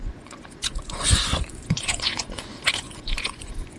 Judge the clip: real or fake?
fake